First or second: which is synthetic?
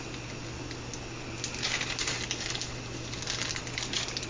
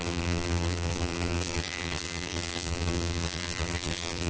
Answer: second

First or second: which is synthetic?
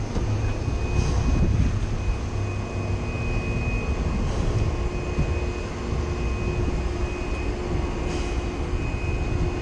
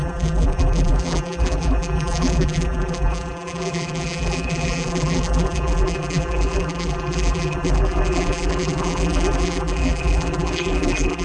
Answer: second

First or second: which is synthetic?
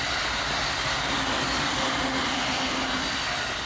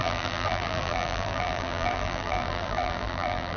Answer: second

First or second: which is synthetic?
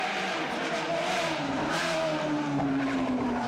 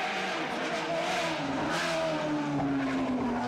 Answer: first